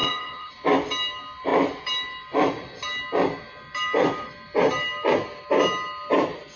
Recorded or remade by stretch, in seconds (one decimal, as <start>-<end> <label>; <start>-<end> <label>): 0.0-0.5 remade; 0.5-6.6 recorded